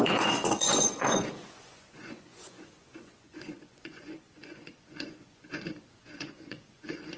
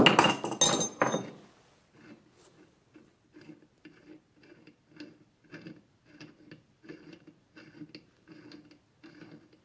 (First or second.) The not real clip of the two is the first